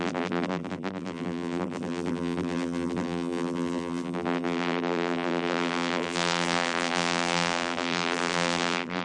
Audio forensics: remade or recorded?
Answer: remade